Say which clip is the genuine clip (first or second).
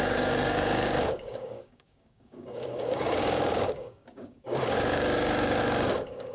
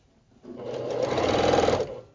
second